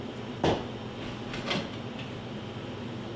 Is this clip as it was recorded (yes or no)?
yes